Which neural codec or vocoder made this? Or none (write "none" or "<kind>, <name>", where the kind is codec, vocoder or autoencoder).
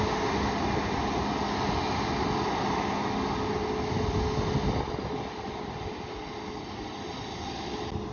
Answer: none